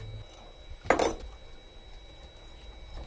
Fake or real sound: real